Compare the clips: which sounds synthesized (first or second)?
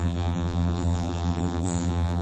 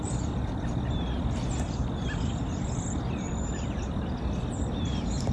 first